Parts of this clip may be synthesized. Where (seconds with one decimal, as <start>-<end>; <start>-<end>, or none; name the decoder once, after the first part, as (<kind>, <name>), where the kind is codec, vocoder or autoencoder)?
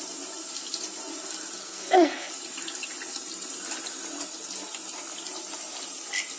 1.6-2.3 (codec, SNAC)